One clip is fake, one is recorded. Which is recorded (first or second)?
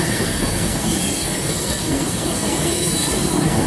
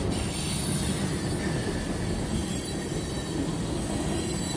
second